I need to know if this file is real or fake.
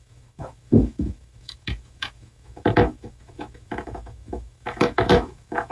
fake